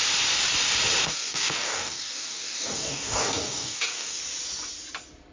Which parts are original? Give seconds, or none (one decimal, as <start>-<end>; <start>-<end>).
0.0-1.0; 4.2-5.3